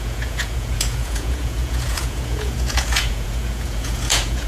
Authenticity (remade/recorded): remade